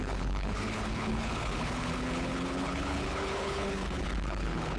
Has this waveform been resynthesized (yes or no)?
yes